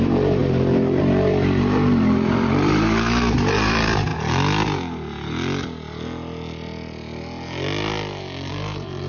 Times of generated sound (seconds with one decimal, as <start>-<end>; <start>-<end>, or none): 0.0-4.1; 8.5-9.1